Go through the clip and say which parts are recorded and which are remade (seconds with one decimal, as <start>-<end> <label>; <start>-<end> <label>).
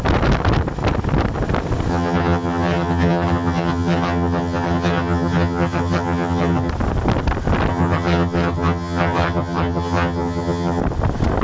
0.0-1.9 recorded; 1.9-6.7 remade; 6.7-7.7 recorded; 7.7-10.8 remade; 10.8-11.4 recorded